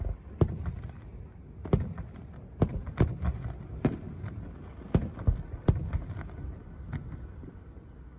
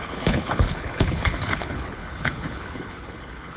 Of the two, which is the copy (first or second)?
second